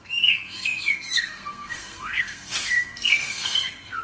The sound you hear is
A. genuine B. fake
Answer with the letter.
B